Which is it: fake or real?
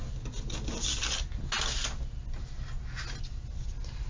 real